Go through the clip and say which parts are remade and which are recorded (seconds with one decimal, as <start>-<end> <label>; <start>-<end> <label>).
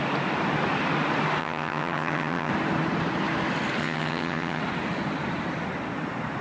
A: 0.0-1.4 recorded; 1.4-2.5 remade; 2.5-3.8 recorded; 3.8-4.6 remade; 4.6-6.4 recorded